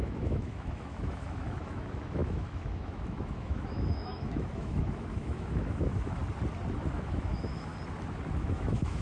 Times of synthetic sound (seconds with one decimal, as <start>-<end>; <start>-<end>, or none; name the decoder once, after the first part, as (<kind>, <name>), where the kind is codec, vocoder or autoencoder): 0.0-6.2 (autoencoder, DAC-VAE); 6.8-7.7; 8.4-9.0